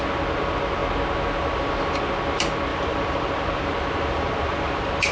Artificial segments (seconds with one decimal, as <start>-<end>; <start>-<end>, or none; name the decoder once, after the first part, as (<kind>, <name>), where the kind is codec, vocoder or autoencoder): 2.7-5.1 (vocoder, BigVGAN v2)